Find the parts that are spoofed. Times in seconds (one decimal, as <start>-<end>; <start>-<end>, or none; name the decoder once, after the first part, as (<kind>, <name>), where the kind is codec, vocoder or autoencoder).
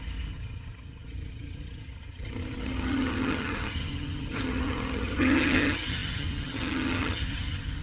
0.0-7.8 (vocoder, HiFi-GAN)